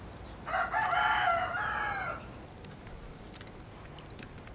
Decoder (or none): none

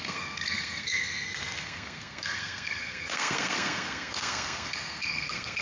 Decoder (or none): codec, SNAC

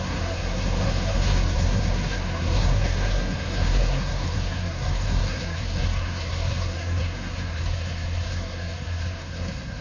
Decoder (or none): codec, SNAC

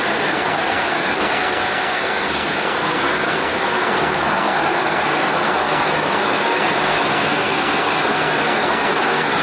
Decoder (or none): codec, SNAC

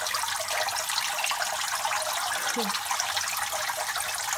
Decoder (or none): none